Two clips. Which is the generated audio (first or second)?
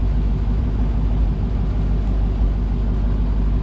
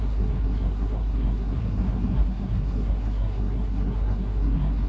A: second